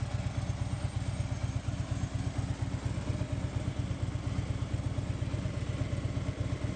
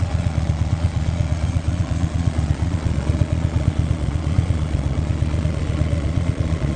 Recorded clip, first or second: first